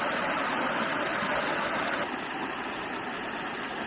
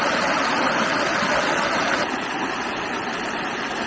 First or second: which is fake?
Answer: second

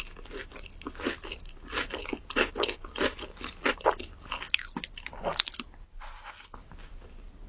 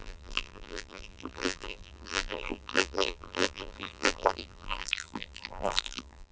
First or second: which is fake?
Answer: second